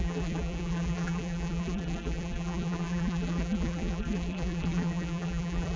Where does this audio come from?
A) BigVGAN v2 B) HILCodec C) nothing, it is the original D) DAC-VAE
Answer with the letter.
A